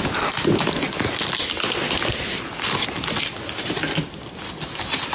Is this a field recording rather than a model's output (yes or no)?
yes